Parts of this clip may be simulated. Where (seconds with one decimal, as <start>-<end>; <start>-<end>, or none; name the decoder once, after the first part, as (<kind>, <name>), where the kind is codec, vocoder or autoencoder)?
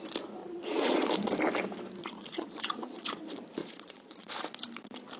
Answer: 0.4-1.1 (vocoder, Vocos); 2.0-3.2; 3.6-4.3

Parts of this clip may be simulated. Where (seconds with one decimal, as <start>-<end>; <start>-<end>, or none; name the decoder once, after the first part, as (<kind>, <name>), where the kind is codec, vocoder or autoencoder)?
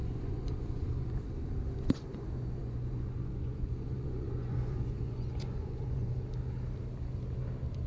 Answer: 0.0-1.2 (vocoder, Vocos); 2.1-6.1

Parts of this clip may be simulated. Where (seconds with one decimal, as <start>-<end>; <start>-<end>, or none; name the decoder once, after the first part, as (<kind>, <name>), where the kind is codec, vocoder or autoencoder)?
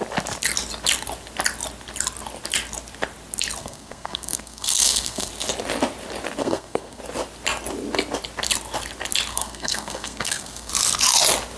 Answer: 3.6-5.3 (codec, SNAC); 6.4-7.0; 9.3-10.7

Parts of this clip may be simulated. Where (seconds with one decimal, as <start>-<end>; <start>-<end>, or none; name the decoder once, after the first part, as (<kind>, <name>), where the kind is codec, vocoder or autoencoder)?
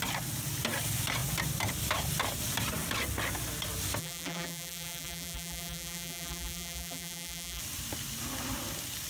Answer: 4.0-7.6 (vocoder, BigVGAN v2)